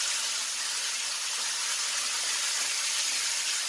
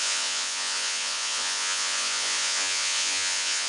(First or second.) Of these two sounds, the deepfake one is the second